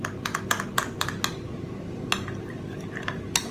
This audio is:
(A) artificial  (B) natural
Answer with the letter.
B